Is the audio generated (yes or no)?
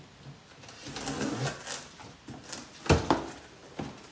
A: no